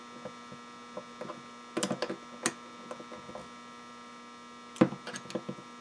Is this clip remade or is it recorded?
recorded